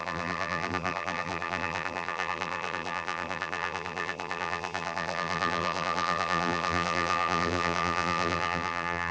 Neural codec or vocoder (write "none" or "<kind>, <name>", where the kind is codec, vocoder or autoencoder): vocoder, BigVGAN v2